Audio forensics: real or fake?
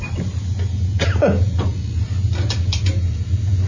real